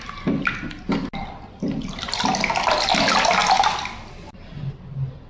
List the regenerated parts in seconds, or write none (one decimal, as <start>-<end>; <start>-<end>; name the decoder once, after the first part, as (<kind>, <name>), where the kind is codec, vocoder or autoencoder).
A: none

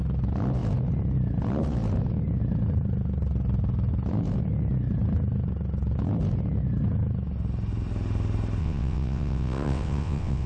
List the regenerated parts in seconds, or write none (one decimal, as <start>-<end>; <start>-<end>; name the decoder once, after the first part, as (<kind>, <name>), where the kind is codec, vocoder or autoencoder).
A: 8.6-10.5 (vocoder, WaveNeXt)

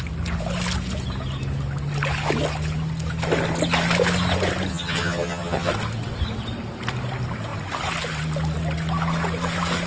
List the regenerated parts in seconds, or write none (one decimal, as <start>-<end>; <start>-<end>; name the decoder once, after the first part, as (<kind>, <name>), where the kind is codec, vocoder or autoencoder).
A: 4.7-5.7 (vocoder, HiFi-GAN)

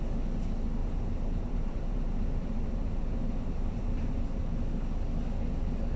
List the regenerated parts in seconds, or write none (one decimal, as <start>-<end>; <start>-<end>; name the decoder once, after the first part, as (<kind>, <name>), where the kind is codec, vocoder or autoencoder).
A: 0.8-4.4 (vocoder, BigVGAN v2)

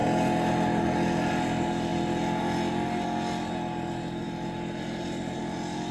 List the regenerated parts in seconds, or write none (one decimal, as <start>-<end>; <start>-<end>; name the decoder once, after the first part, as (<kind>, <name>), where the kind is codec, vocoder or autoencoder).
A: none

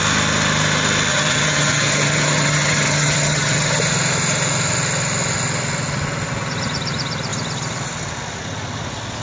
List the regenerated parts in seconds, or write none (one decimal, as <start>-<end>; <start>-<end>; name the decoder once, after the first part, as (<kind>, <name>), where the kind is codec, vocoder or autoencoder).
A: 1.1-3.8 (vocoder, HiFi-GAN)

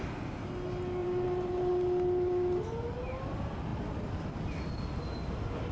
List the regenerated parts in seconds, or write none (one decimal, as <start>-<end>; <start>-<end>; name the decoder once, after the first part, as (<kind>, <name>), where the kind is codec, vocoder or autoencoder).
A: 1.0-1.7 (vocoder, BigVGAN v2)